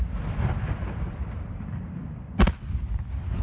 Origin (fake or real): real